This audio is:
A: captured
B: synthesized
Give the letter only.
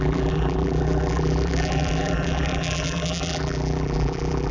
B